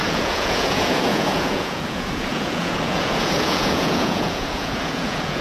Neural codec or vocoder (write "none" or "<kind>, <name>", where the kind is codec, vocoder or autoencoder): vocoder, Vocos